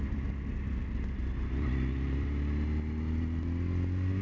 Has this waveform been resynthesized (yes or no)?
no